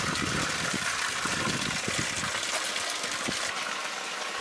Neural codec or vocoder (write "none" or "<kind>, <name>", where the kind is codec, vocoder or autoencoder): none